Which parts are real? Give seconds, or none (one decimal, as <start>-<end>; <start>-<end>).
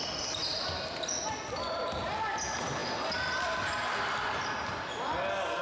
0.0-5.6